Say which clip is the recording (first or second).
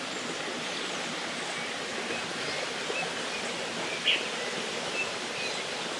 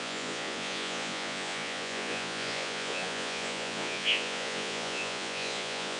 first